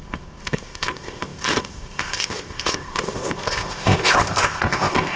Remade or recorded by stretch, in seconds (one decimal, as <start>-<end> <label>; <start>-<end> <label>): 0.0-5.2 remade

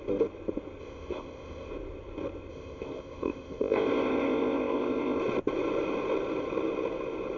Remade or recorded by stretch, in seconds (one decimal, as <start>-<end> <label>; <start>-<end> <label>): 0.0-0.8 recorded; 0.8-1.7 remade; 1.7-2.5 recorded; 2.5-5.2 remade; 5.2-7.4 recorded

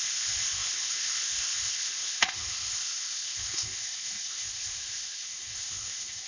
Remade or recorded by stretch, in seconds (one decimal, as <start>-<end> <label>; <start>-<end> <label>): 0.0-6.3 remade